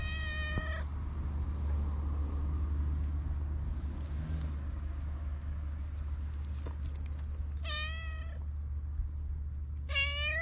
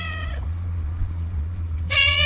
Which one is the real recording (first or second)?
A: first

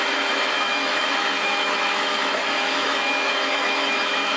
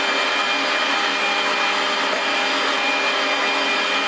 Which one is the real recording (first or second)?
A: second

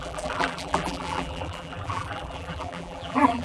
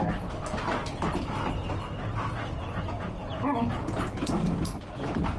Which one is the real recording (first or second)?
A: second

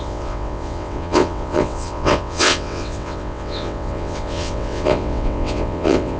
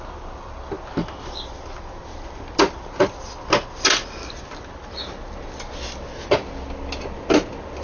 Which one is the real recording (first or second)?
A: second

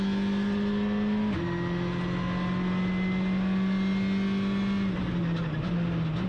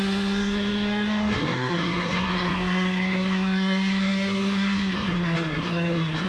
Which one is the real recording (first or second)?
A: first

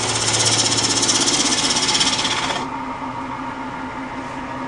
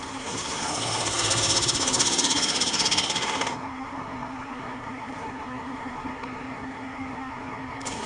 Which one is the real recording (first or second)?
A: first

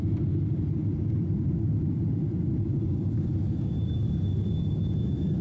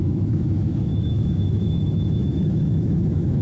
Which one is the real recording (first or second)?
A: first